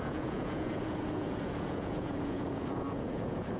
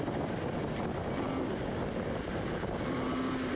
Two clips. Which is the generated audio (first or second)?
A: first